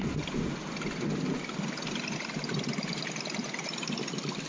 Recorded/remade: recorded